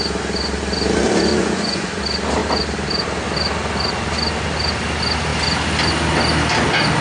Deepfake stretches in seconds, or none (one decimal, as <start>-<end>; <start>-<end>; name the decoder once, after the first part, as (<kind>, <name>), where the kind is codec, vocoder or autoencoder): 1.3-2.0 (vocoder, Vocos)

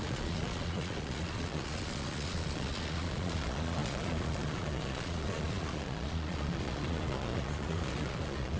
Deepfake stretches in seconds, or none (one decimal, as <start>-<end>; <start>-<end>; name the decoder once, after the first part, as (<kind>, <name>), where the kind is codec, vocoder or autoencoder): 0.0-8.6 (vocoder, Vocos)

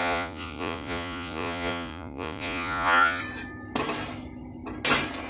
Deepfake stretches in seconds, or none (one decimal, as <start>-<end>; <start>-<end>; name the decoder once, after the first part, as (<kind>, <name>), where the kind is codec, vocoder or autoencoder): 0.0-3.2 (vocoder, Vocos)

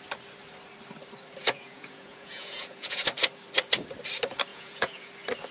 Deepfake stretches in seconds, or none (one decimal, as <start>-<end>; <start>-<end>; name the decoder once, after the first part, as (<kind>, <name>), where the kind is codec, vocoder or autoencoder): 1.4-3.0 (vocoder, Vocos); 4.5-5.1

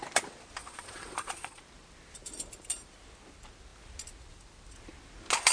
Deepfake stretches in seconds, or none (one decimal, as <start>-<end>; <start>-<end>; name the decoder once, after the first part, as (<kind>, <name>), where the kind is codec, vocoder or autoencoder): 0.6-1.6 (vocoder, Vocos)

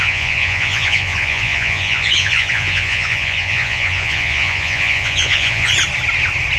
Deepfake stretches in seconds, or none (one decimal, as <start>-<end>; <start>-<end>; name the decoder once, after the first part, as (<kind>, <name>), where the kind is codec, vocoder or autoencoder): 0.0-5.7 (vocoder, Vocos)

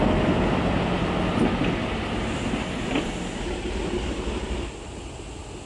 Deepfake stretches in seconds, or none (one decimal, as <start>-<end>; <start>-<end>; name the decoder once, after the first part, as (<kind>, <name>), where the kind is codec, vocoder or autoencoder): none